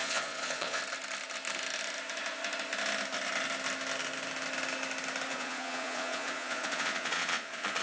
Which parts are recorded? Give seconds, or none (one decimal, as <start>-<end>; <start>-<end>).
0.8-5.3